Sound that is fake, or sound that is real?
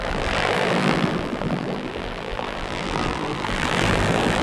fake